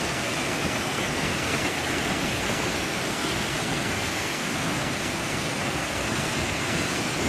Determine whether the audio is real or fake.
fake